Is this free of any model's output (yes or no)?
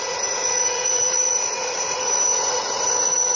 no